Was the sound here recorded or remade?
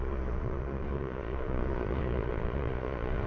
remade